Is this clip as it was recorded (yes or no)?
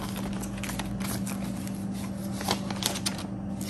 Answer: yes